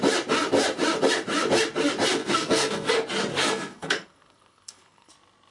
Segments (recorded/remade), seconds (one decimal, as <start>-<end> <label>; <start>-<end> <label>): 0.0-2.2 recorded; 2.2-2.9 remade; 2.9-3.3 recorded; 3.3-5.1 remade; 5.1-5.5 recorded